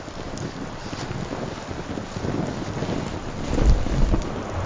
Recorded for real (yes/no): yes